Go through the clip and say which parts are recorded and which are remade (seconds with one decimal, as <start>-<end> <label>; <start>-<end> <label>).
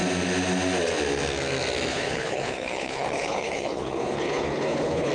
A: 0.0-1.9 recorded; 1.9-5.1 remade